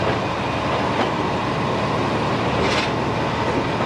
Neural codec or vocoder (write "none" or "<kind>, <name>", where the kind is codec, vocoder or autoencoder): none